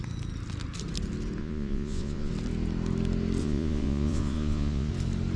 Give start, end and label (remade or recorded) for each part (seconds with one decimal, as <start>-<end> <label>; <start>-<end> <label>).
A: 0.0-1.4 recorded; 1.4-2.3 remade; 2.3-3.4 recorded; 3.4-4.9 remade; 4.9-5.4 recorded